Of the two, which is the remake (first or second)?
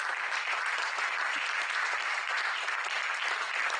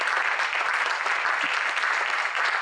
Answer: first